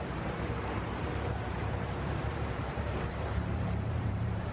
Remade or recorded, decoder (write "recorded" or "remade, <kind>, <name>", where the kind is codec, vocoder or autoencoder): remade, vocoder, BigVGAN v2